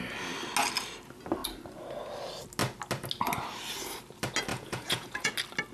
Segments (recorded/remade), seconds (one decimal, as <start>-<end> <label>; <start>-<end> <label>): 0.0-4.5 recorded; 4.5-5.3 remade; 5.3-5.7 recorded